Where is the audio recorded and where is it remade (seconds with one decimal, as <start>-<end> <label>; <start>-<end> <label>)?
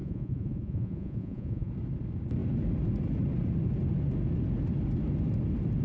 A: 0.0-1.7 remade; 1.7-5.8 recorded